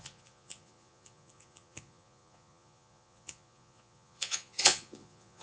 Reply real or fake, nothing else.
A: fake